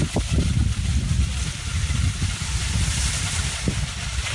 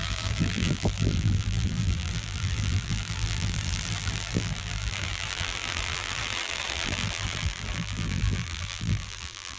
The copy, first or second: second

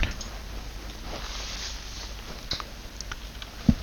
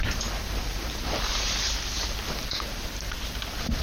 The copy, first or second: second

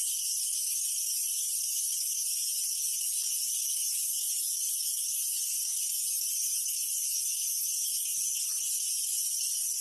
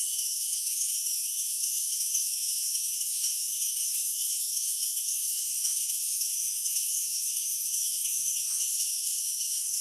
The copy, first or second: second